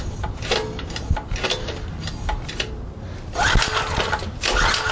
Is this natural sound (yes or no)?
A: yes